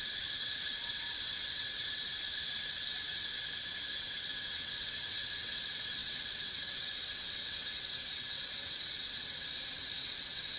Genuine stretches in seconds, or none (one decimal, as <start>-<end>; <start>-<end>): none